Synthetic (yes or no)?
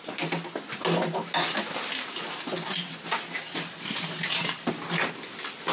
no